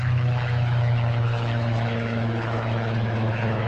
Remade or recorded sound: remade